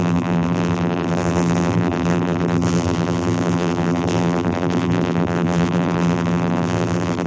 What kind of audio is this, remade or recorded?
remade